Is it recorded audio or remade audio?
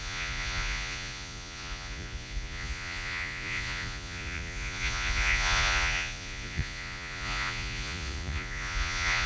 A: remade